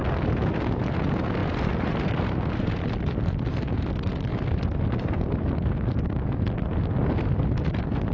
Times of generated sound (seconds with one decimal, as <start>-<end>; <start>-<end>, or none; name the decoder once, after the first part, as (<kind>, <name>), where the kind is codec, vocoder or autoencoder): 1.4-2.9 (vocoder, BigVGAN v2)